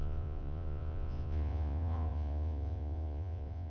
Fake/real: fake